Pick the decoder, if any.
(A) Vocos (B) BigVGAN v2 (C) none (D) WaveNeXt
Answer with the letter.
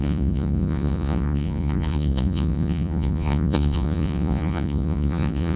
A